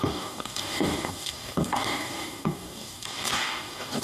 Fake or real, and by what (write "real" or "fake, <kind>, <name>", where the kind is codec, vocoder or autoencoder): fake, codec, DAC